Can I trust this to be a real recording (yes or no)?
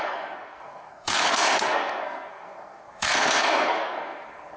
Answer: no